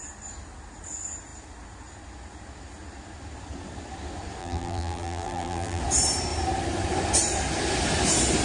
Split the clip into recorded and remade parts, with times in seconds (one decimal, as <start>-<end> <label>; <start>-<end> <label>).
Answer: 0.0-4.4 recorded; 4.4-5.8 remade; 5.8-8.4 recorded